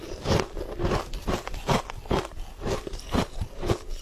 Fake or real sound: fake